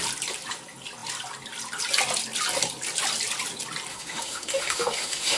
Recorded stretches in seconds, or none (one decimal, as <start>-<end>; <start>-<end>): 0.0-3.9